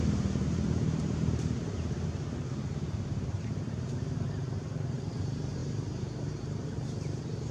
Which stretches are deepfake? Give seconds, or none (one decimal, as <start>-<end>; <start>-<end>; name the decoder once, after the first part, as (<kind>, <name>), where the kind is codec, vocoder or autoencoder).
0.0-7.5 (vocoder, BigVGAN v2)